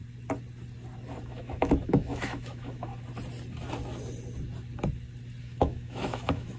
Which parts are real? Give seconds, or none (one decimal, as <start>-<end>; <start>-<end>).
0.0-1.2; 2.9-5.4